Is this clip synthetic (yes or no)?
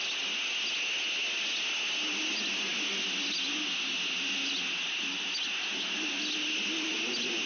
no